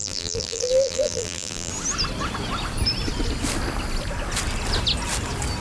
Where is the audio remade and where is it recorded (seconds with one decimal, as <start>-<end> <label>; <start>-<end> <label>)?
0.0-1.7 remade; 1.7-5.6 recorded